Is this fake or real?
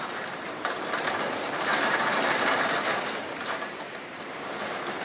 fake